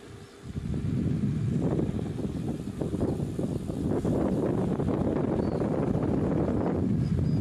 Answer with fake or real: real